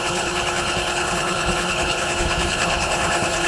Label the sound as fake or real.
fake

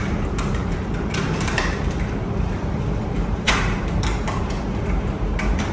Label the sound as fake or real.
fake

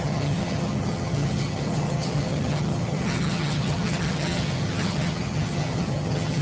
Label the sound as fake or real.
fake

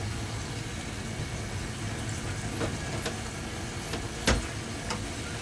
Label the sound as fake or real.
real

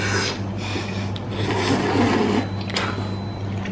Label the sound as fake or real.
real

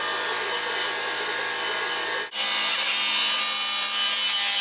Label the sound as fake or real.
real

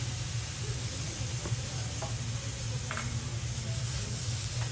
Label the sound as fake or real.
real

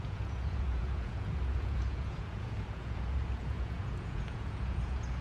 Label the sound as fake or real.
fake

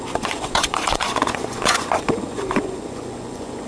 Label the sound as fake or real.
fake